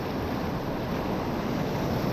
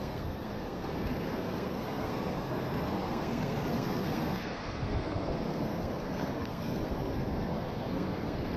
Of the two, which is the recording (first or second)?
first